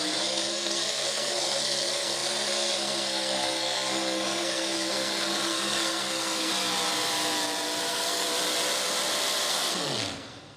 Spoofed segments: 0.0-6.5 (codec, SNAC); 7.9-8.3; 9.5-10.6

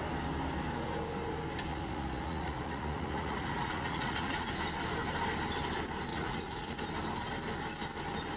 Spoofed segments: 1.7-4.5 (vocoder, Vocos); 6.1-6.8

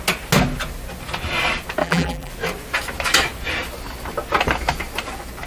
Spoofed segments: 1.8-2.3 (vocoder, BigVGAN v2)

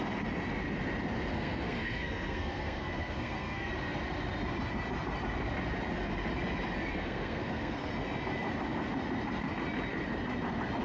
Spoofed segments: 1.3-3.7 (codec, SNAC); 6.9-7.9

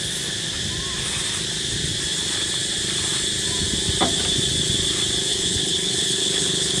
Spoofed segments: 5.3-6.8 (codec, HILCodec)

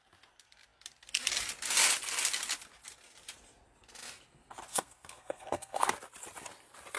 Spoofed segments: 4.7-5.9 (codec, SNAC)

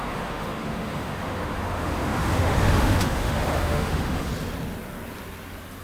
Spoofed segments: 0.0-4.3 (autoencoder, DAC-VAE)